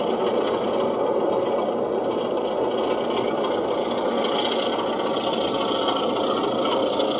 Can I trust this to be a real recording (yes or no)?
yes